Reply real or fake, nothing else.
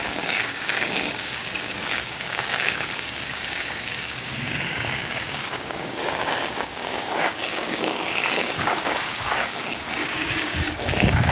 fake